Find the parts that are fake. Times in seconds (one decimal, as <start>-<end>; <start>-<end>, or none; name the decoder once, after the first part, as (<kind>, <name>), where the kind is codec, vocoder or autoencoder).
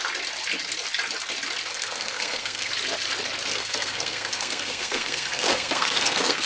1.7-2.7 (codec, SNAC); 3.5-6.5